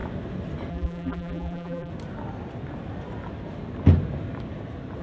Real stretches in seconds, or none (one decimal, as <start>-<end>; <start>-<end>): 0.0-0.7; 1.9-5.0